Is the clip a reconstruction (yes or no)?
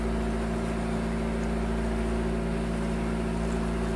no